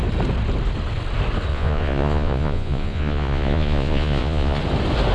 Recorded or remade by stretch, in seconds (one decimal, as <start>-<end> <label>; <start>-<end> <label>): 0.0-1.5 recorded; 1.5-4.6 remade; 4.6-5.1 recorded